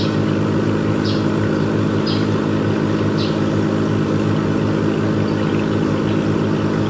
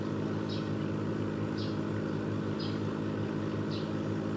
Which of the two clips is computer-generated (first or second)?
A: first